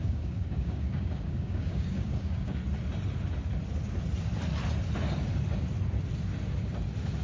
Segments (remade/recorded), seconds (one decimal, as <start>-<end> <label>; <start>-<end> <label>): 0.0-2.6 remade; 2.6-7.2 recorded